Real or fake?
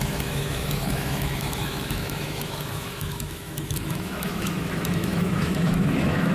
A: fake